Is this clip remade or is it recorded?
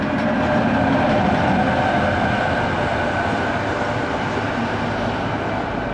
recorded